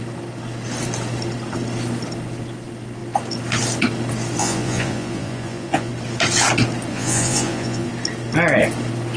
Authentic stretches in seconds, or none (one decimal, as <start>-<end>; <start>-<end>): 0.0-4.4; 5.9-6.9; 7.9-9.2

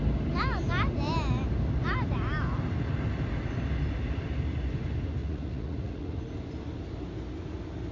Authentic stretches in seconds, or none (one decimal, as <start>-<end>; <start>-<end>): 0.0-5.2; 6.2-7.9

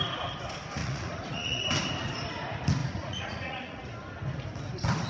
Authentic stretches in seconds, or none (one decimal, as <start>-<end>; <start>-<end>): 0.0-0.8; 1.6-2.8; 3.8-5.1

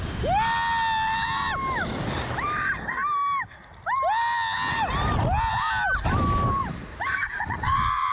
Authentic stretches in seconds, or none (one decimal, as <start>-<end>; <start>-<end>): 0.0-6.6

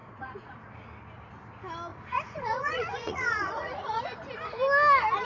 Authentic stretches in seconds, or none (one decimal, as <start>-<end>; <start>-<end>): 0.7-1.9; 4.0-5.2